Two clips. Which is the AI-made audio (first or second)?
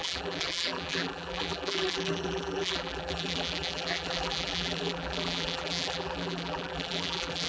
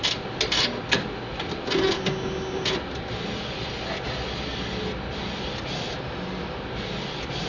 first